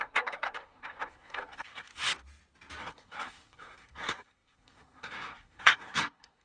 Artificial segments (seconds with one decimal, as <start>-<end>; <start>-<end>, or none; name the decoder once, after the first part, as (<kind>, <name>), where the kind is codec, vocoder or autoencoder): 0.0-1.9 (codec, SNAC); 2.8-6.4